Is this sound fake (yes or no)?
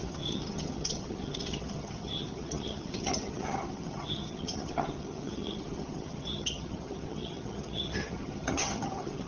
yes